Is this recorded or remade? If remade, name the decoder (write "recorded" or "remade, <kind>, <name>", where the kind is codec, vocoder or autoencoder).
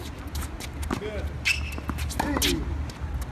recorded